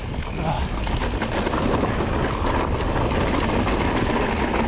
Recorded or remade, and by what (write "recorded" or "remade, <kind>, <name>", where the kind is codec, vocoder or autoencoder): recorded